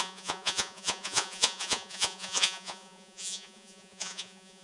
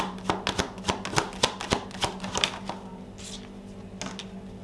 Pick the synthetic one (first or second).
first